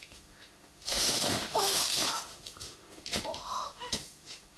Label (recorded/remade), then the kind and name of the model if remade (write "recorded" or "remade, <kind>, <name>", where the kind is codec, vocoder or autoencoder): remade, autoencoder, DAC-VAE